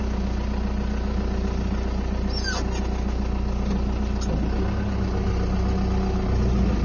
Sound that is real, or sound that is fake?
real